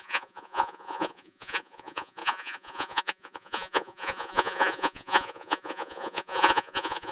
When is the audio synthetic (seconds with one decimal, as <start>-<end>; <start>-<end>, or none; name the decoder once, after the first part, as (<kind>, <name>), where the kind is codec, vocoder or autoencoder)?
0.0-7.1 (vocoder, Vocos)